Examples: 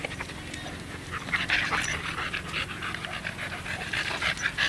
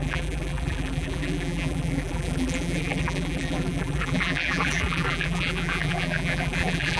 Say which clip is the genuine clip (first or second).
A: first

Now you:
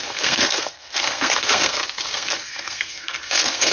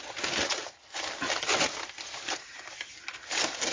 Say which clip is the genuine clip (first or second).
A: second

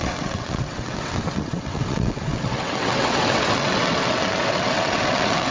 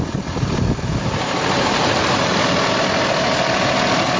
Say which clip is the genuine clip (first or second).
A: second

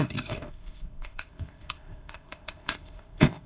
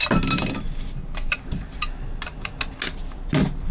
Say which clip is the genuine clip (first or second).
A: second